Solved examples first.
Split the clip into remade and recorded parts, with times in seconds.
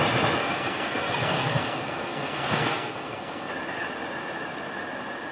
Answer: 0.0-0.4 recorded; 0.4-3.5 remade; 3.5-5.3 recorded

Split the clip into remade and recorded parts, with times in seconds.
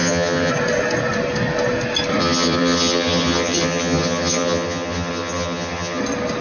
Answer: 0.0-0.5 remade; 0.5-2.2 recorded; 2.2-6.0 remade; 6.0-6.4 recorded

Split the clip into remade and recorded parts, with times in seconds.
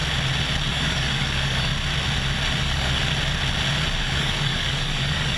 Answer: 0.0-0.7 recorded; 0.7-1.7 remade; 1.7-2.6 recorded; 2.6-3.0 remade; 3.0-4.0 recorded; 4.0-5.4 remade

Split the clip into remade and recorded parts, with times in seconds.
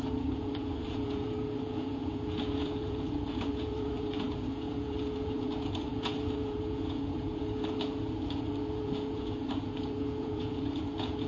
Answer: 0.0-11.3 remade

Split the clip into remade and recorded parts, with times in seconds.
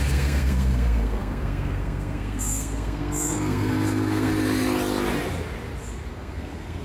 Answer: 0.0-4.3 remade; 4.3-6.1 recorded; 6.1-6.8 remade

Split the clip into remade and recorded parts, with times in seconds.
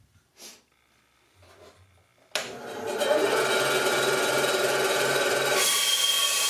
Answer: 0.0-3.9 recorded; 3.9-5.8 remade; 5.8-6.5 recorded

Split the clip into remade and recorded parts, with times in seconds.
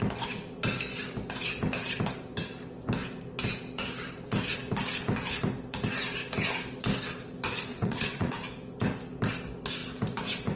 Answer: 0.0-7.7 recorded; 7.7-8.3 remade; 8.3-10.6 recorded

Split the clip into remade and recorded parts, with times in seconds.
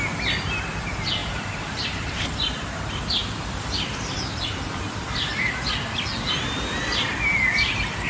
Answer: 0.0-1.2 recorded; 1.2-2.1 remade; 2.1-3.2 recorded; 3.2-8.1 remade